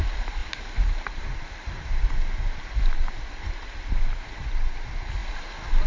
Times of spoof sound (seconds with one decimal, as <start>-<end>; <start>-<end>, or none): 0.4-2.6